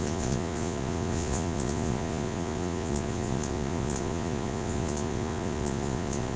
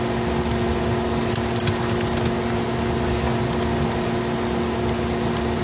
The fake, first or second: first